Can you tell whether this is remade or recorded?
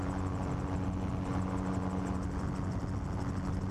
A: recorded